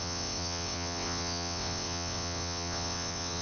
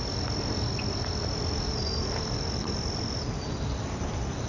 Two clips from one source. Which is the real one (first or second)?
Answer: second